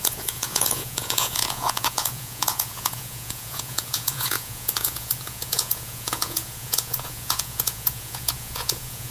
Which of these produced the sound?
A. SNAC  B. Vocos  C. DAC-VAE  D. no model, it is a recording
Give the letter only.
B